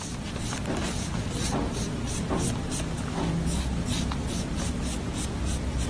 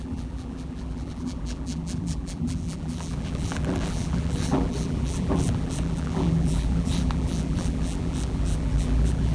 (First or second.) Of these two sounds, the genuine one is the first